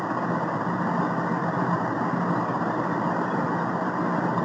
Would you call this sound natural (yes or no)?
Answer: yes